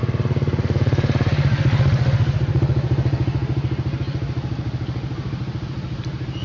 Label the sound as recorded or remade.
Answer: recorded